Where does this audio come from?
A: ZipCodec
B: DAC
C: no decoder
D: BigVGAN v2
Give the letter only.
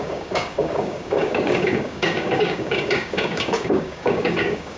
B